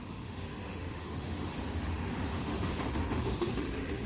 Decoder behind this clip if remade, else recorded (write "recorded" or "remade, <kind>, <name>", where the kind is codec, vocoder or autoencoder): remade, autoencoder, DAC-VAE